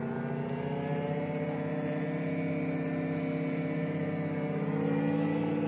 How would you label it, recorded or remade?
recorded